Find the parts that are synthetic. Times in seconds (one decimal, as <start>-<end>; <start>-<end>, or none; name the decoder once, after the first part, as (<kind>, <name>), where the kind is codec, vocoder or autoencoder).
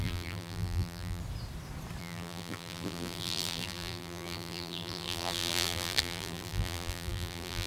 0.0-1.2 (vocoder, BigVGAN v2); 2.0-7.7